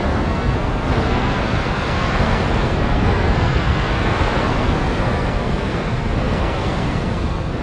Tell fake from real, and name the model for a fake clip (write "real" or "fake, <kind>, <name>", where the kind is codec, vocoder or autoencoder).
fake, codec, SNAC